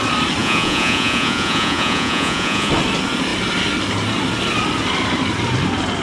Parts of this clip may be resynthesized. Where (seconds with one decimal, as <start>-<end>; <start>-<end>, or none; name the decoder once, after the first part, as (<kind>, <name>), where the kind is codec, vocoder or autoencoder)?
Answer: 0.4-2.7 (vocoder, Vocos)